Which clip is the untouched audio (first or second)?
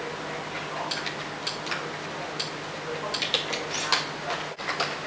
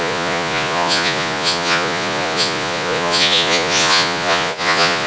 first